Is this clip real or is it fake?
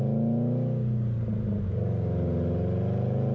real